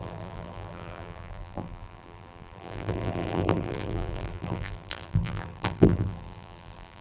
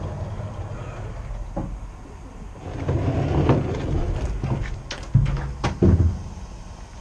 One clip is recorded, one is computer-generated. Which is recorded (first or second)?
second